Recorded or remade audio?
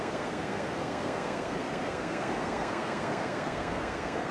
remade